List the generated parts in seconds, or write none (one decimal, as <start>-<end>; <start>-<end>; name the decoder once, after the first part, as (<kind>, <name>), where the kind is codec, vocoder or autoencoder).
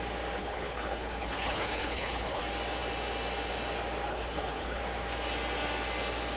0.4-2.4 (codec, HILCodec); 4.1-4.8